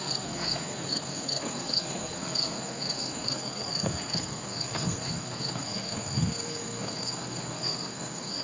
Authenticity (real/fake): fake